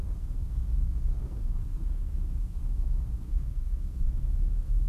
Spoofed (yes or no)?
yes